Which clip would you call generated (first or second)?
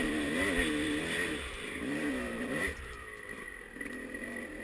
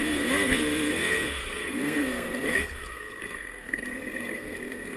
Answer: second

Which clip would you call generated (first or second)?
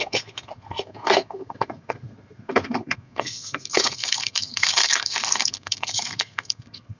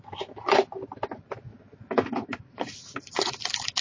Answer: first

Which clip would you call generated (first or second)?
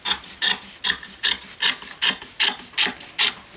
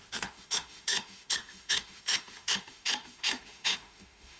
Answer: second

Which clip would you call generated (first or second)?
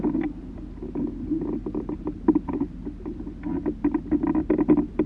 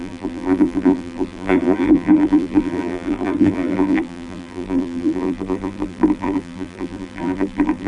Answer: second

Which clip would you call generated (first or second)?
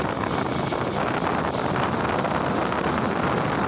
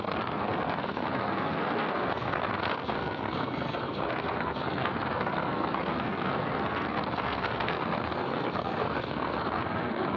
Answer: second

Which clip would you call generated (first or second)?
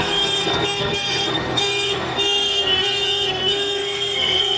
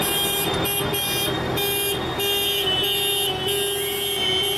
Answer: first